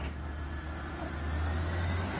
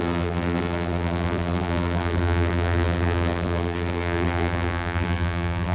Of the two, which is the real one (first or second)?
first